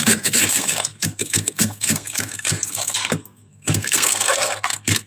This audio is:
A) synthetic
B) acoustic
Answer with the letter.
A